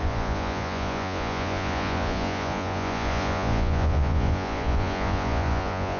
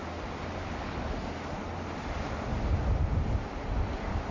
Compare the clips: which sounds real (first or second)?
second